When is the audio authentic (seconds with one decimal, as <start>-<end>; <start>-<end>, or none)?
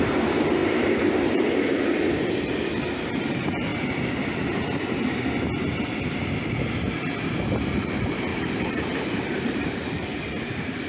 0.6-3.0; 3.7-7.9